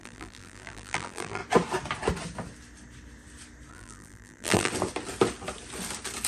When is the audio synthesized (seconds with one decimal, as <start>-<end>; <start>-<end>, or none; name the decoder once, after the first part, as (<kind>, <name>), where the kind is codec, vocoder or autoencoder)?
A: 0.0-1.4 (vocoder, BigVGAN v2); 3.7-4.7